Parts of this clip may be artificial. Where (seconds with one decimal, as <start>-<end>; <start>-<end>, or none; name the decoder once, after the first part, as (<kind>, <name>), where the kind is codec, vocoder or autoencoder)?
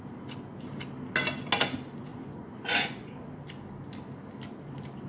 2.1-3.1 (vocoder, Vocos)